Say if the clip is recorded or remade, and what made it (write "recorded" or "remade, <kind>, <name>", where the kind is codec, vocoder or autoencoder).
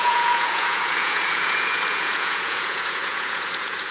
remade, vocoder, Vocos